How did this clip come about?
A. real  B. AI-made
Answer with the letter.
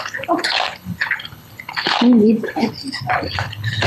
B